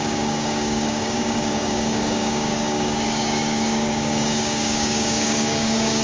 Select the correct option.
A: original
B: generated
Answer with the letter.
B